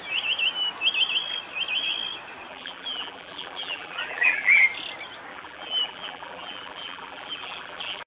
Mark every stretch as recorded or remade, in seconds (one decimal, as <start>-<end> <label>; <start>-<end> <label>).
0.0-2.5 recorded; 2.5-4.6 remade; 4.6-5.3 recorded; 5.3-8.1 remade